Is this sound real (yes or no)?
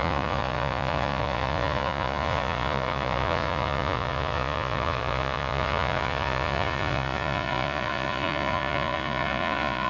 no